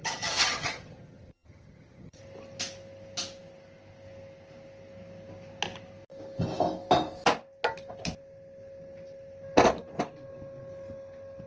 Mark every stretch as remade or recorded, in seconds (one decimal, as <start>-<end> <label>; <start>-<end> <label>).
0.0-2.2 remade; 2.2-11.5 recorded